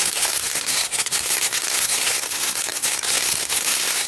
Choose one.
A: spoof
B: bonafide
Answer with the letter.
A